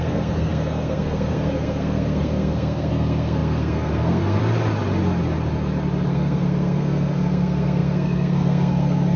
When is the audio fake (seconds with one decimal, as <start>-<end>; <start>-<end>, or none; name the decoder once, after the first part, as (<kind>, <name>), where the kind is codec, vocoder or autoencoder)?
0.0-4.4 (codec, SNAC); 6.1-9.2